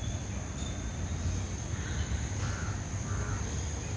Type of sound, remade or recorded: recorded